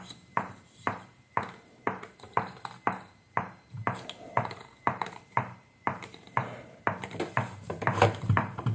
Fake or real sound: fake